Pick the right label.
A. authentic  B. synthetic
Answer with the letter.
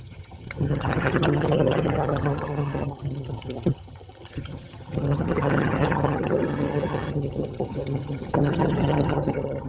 B